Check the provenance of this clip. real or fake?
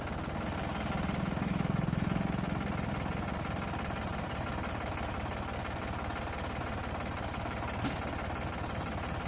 real